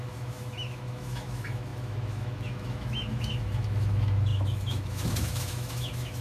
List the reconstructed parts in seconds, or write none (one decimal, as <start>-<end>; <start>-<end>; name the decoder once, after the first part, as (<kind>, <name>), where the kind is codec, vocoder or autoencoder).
0.0-6.2 (autoencoder, DAC-VAE)

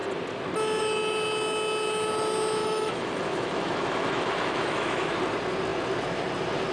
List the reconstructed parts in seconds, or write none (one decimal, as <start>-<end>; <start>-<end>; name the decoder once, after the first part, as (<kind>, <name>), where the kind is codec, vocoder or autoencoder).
2.6-5.1 (autoencoder, DAC-VAE)

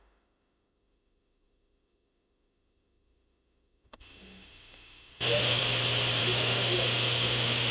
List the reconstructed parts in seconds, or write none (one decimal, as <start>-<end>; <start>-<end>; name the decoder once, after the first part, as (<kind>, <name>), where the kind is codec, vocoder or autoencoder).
0.0-5.6 (autoencoder, DAC-VAE); 6.2-7.7

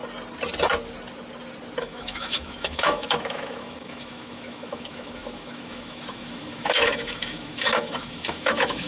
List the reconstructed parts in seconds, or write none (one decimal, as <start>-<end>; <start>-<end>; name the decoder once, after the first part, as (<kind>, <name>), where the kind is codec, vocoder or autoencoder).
1.8-8.9 (autoencoder, DAC-VAE)

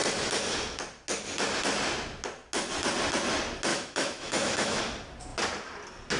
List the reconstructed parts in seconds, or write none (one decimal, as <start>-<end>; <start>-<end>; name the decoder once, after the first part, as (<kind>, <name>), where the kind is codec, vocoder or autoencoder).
3.7-4.8 (autoencoder, DAC-VAE)

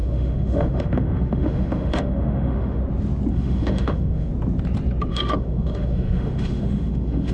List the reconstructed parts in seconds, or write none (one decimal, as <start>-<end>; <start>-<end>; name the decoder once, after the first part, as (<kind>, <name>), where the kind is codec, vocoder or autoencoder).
0.0-2.8 (autoencoder, DAC-VAE); 3.3-4.3; 5.1-7.3

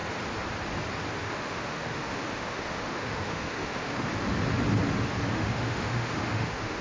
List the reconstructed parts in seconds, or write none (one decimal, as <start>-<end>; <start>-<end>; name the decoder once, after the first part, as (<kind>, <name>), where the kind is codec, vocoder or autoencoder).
1.2-4.1 (autoencoder, DAC-VAE); 5.3-6.8